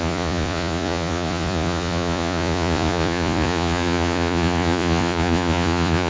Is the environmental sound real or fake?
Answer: fake